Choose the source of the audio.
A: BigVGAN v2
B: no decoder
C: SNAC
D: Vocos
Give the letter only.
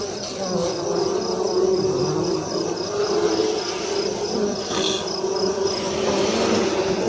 B